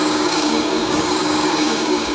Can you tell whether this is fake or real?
fake